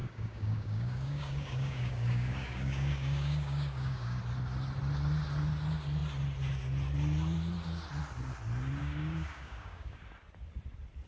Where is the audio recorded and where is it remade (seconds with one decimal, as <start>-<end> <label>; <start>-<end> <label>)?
0.0-4.2 remade; 4.2-8.8 recorded; 8.8-10.0 remade; 10.0-11.1 recorded